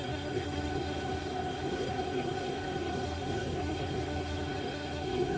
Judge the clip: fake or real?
fake